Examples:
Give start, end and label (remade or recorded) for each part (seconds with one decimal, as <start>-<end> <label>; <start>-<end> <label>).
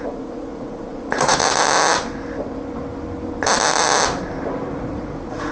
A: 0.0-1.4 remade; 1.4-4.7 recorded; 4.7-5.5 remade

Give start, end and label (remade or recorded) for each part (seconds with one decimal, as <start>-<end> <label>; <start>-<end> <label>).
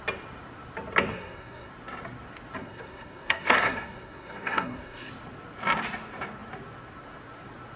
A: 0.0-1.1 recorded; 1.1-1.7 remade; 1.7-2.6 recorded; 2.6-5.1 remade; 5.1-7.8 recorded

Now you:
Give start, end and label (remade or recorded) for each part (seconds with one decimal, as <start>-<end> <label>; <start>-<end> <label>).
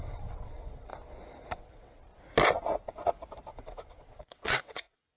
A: 0.0-0.9 remade; 0.9-1.6 recorded; 1.6-2.1 remade; 2.1-3.5 recorded; 3.5-5.2 remade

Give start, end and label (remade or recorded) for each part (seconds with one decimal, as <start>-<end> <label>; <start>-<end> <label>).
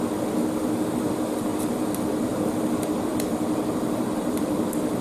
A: 0.0-1.5 recorded; 1.5-2.6 remade; 2.6-3.1 recorded; 3.1-4.6 remade; 4.6-5.0 recorded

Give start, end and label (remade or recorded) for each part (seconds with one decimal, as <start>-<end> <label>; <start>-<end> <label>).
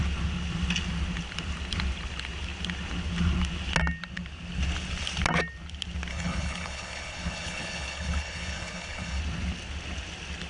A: 0.0-6.1 recorded; 6.1-9.2 remade; 9.2-10.5 recorded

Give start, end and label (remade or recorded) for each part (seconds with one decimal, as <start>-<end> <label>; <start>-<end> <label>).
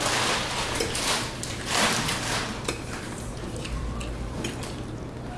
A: 0.0-5.4 recorded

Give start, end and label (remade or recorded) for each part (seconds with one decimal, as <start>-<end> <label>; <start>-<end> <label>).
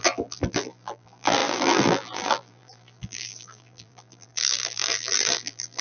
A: 0.0-5.8 remade